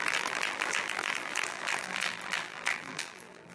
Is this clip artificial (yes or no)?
yes